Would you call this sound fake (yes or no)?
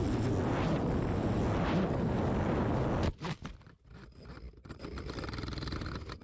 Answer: no